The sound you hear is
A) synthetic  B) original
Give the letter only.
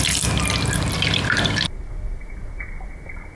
B